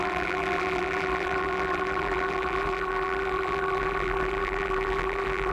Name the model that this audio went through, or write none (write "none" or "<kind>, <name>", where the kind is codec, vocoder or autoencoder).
vocoder, BigVGAN v2